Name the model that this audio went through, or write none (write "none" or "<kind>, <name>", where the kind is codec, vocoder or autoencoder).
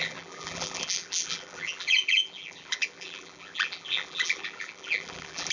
vocoder, BigVGAN v2